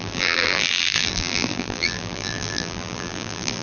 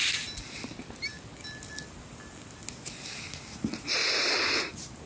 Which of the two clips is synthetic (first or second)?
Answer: first